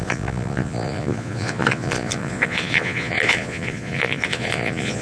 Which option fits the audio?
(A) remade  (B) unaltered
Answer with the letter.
A